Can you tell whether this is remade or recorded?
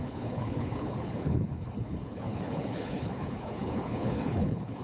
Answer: remade